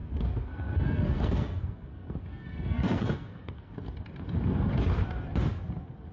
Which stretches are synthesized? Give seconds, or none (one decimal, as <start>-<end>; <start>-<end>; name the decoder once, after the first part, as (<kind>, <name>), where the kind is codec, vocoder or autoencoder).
0.0-3.7 (codec, SNAC)